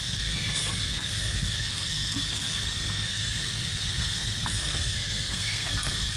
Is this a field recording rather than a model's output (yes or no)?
no